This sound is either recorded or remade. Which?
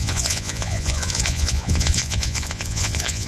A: remade